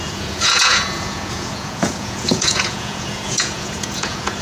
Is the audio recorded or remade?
remade